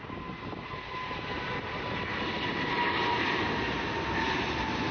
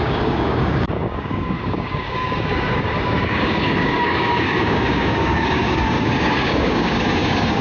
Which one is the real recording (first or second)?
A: first